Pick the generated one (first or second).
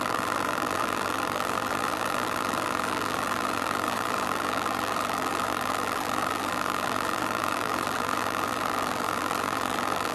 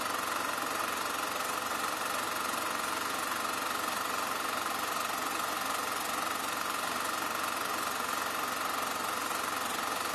first